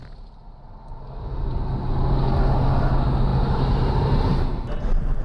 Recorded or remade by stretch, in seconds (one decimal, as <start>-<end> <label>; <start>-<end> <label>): 0.0-3.3 recorded; 3.3-5.2 remade